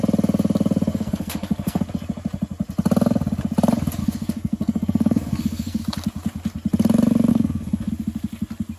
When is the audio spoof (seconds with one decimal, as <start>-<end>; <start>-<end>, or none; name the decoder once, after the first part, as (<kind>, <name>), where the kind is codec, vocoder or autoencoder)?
0.9-1.8 (codec, SNAC); 4.0-5.8; 7.3-7.9